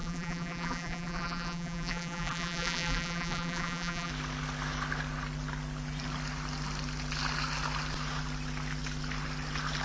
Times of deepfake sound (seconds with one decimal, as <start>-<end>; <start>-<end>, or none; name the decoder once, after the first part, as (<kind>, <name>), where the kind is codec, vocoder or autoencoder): 0.0-4.1 (vocoder, BigVGAN v2)